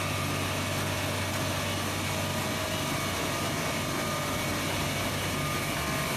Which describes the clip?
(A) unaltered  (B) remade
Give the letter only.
A